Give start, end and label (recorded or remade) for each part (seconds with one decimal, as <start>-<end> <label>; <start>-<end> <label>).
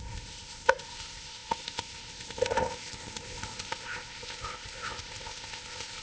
0.0-6.0 remade